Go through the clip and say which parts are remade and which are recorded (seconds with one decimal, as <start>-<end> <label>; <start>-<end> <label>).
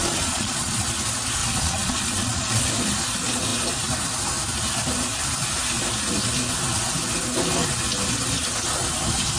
0.0-0.8 remade; 0.8-1.4 recorded; 1.4-2.7 remade; 2.7-9.4 recorded